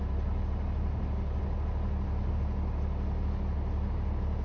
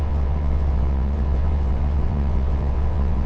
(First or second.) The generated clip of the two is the second